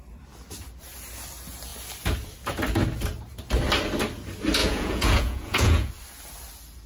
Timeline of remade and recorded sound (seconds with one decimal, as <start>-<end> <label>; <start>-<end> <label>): 0.0-4.6 recorded; 4.6-5.9 remade; 5.9-6.9 recorded